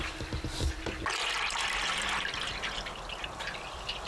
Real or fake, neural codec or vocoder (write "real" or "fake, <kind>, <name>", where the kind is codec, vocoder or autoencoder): real